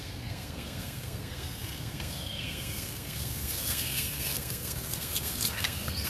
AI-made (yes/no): yes